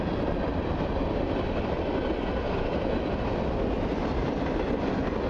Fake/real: fake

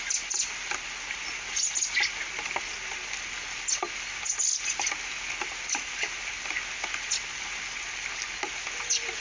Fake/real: real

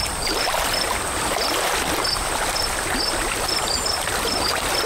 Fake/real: real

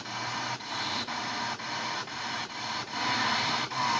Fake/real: fake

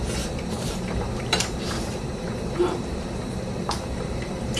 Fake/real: fake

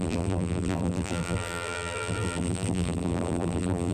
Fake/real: fake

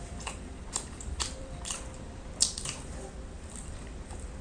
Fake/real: fake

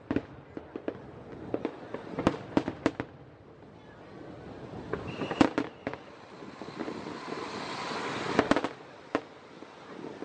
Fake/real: real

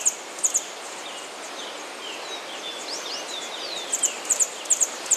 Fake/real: fake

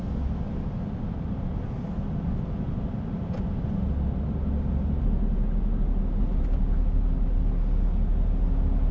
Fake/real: real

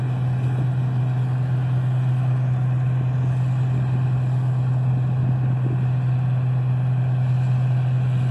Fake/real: real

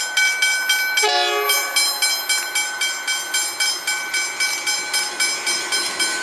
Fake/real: real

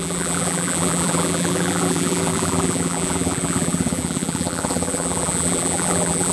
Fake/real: fake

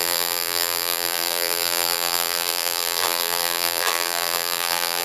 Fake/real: fake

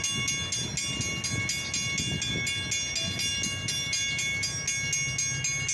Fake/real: real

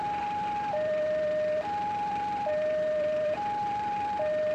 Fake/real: fake